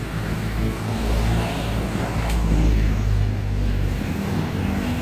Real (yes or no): no